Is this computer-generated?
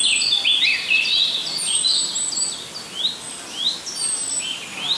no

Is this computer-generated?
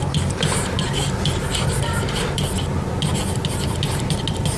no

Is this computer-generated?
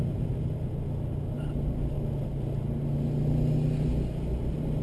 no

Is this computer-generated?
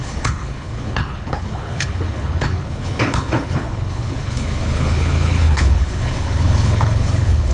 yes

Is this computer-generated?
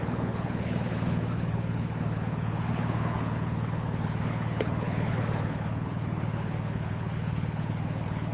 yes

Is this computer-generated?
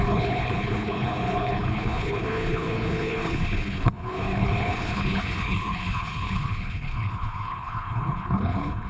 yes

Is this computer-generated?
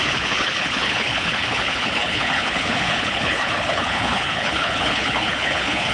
yes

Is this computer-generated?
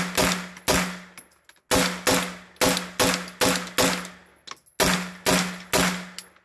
no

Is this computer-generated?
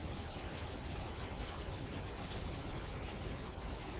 yes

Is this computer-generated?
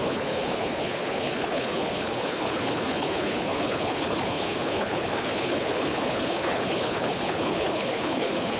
yes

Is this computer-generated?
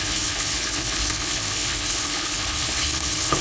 yes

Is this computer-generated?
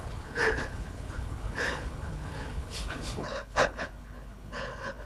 yes